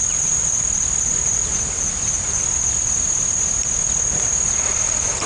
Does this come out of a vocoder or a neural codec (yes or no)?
no